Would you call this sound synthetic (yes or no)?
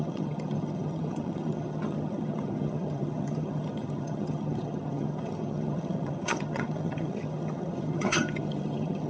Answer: yes